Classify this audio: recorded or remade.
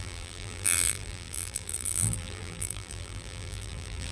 remade